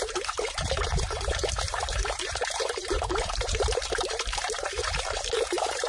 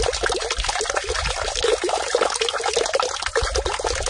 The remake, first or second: first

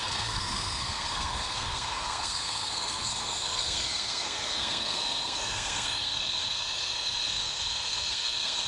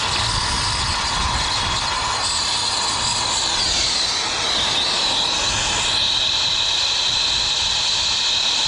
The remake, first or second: first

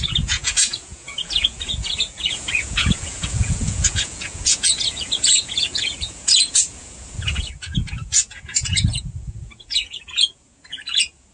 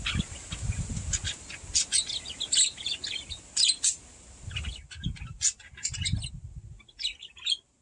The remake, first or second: first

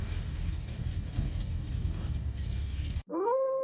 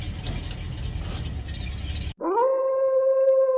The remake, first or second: first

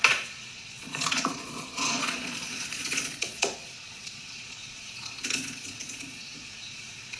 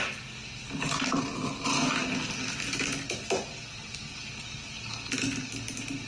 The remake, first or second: first